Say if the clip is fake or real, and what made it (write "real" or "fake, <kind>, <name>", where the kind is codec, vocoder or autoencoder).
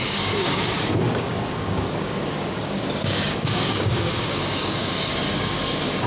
fake, codec, DAC